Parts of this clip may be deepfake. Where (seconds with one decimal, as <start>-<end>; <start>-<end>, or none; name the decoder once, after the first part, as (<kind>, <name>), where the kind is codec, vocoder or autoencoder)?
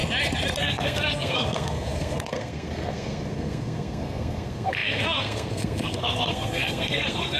0.6-7.4 (codec, SNAC)